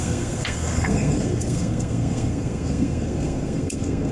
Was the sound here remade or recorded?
remade